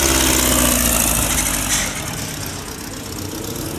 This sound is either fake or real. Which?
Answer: real